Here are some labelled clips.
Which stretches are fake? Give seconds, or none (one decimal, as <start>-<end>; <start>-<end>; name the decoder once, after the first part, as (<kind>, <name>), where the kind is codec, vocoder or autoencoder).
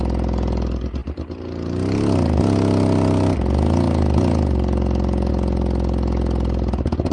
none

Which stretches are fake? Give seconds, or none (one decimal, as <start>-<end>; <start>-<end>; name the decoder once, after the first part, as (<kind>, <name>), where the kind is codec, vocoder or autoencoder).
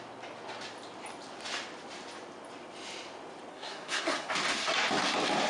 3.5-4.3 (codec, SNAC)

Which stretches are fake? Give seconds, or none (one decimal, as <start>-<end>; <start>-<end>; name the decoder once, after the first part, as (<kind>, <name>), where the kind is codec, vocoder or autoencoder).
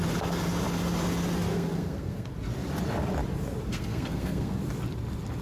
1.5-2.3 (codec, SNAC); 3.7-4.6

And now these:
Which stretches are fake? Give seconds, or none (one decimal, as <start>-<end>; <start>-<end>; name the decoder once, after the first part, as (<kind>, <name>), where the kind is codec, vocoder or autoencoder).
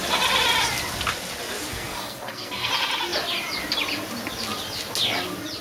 1.7-2.7 (codec, SNAC)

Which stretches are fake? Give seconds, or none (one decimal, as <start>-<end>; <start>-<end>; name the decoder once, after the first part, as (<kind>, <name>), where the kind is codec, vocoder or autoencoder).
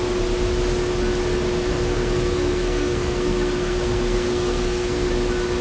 1.7-5.1 (codec, SNAC)